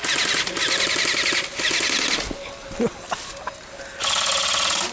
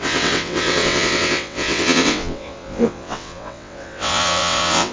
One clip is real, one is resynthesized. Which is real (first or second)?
first